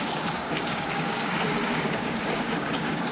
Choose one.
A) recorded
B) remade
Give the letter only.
B